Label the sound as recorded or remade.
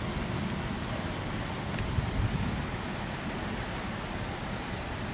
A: remade